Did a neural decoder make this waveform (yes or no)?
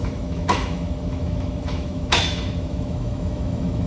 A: yes